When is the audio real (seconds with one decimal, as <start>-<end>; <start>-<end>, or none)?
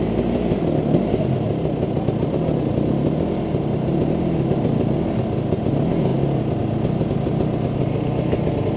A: 0.0-8.8